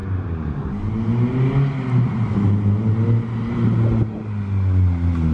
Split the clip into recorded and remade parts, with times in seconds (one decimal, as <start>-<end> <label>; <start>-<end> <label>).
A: 0.0-5.3 recorded